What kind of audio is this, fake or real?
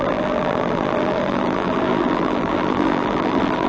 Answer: fake